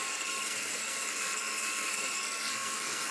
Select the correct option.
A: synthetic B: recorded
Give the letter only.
A